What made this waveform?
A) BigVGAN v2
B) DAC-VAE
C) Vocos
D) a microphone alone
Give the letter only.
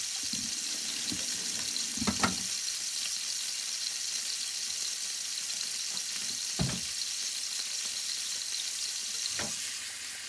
D